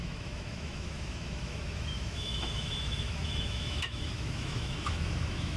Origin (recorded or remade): remade